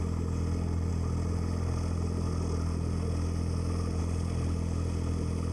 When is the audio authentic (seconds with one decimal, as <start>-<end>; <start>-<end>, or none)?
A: 0.0-5.5